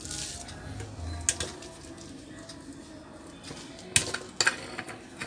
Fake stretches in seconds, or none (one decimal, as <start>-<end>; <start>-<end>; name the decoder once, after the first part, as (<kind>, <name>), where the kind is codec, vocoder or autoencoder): none